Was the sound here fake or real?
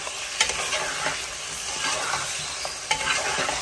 real